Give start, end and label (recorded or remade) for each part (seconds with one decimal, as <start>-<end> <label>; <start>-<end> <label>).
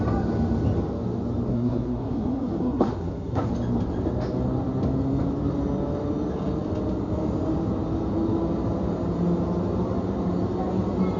0.0-1.5 recorded; 1.5-3.5 remade; 3.5-11.2 recorded